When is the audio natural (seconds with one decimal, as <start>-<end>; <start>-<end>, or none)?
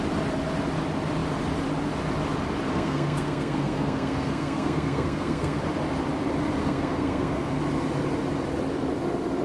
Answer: 0.0-2.7; 5.6-6.6; 7.5-9.4